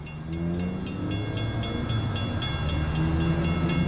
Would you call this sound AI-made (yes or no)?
no